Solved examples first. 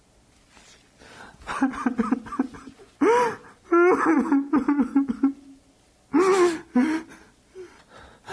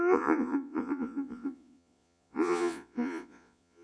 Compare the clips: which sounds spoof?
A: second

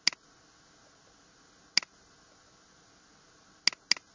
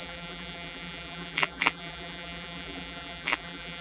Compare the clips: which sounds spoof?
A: second